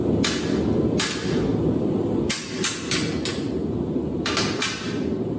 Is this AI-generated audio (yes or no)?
no